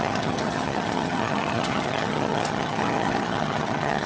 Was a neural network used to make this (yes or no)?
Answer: yes